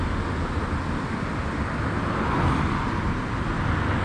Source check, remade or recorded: recorded